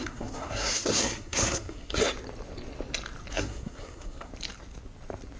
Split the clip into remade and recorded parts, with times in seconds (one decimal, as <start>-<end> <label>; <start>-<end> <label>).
0.0-2.0 remade; 2.0-3.3 recorded; 3.3-4.3 remade; 4.3-5.4 recorded